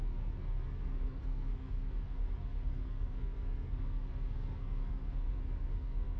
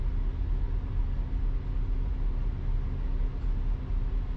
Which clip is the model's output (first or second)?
first